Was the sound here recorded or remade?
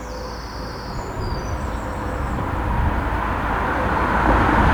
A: recorded